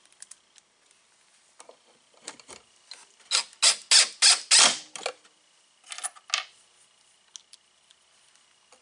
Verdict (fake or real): real